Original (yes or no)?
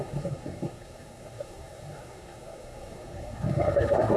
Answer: no